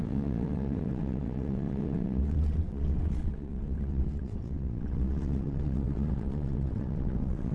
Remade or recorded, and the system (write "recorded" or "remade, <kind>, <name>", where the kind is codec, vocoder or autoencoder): remade, vocoder, WaveNeXt